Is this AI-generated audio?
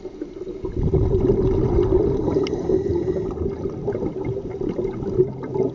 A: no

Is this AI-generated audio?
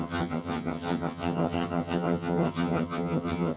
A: yes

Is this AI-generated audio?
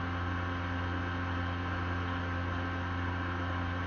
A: no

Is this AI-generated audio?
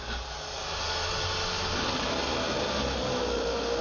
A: no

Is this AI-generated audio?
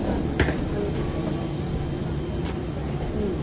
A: no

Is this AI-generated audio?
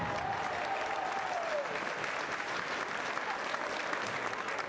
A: no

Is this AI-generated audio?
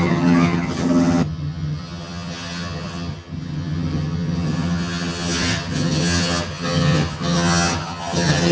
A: yes